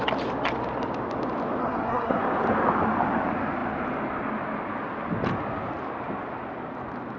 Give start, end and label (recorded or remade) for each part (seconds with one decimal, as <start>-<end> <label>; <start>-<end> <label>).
0.0-1.6 recorded; 1.6-2.2 remade; 2.2-7.2 recorded